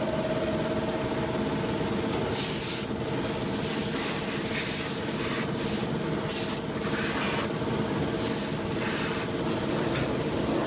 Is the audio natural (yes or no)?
yes